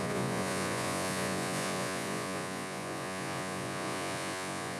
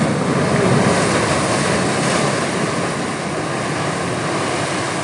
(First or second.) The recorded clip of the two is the second